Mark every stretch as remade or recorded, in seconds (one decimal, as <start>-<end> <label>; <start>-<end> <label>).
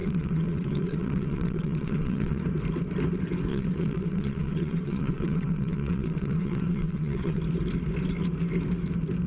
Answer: 0.0-2.4 remade; 2.4-3.5 recorded; 3.5-7.4 remade; 7.4-9.3 recorded